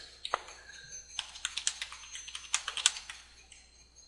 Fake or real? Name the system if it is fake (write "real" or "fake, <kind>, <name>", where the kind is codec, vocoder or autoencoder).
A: real